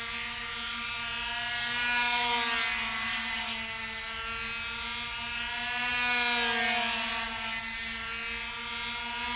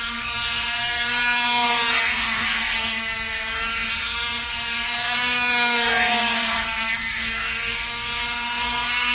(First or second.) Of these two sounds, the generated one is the second